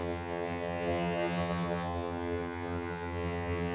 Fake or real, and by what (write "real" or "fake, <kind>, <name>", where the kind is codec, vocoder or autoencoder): fake, vocoder, HiFi-GAN